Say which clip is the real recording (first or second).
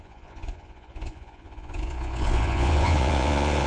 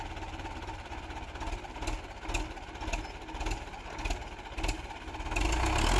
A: second